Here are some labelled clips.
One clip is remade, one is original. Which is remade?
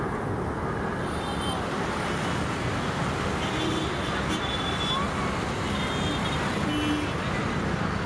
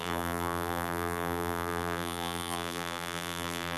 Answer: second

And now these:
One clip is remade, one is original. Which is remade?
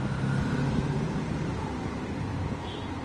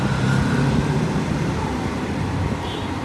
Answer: second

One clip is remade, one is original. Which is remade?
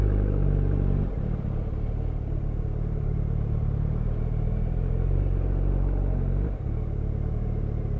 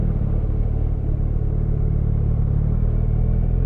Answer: first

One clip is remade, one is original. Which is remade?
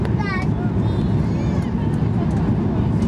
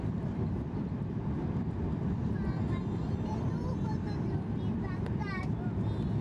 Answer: second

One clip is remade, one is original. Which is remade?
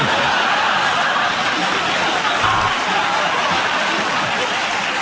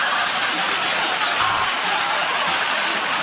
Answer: second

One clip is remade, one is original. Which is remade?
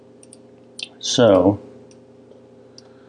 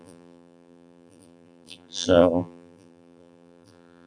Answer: second